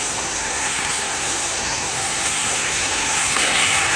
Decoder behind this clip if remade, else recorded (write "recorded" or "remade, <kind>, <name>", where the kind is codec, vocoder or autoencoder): remade, codec, SNAC